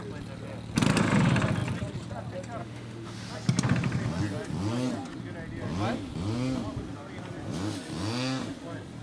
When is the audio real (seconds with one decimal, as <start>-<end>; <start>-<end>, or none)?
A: 0.0-2.6; 3.3-9.0